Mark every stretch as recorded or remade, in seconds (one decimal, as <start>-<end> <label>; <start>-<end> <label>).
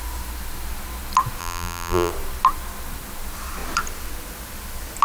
0.0-1.4 recorded; 1.4-2.1 remade; 2.1-5.0 recorded